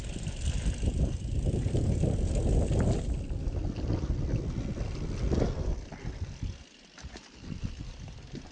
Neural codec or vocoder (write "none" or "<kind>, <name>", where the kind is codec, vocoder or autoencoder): none